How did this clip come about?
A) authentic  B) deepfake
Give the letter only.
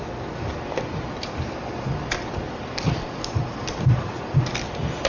A